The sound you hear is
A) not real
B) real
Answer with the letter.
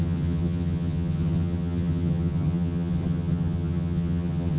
A